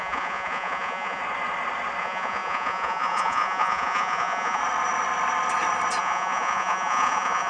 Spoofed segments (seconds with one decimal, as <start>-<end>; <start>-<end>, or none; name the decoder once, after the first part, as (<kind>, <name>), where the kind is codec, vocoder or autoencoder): 0.0-1.2 (vocoder, Vocos); 2.0-4.6; 6.0-7.5